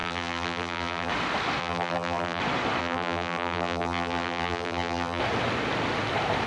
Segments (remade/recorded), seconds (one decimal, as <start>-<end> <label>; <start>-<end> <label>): 0.0-1.1 remade; 1.1-1.6 recorded; 1.6-2.4 remade; 2.4-2.8 recorded; 2.8-5.2 remade; 5.2-6.5 recorded